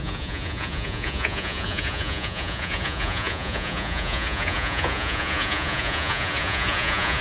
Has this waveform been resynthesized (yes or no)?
yes